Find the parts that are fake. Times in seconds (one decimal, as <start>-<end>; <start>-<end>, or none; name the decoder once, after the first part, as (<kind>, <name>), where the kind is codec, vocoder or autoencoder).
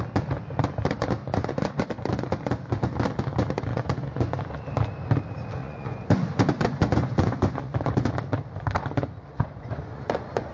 1.3-2.1 (vocoder, Vocos); 3.7-4.6; 5.6-8.1; 9.3-10.5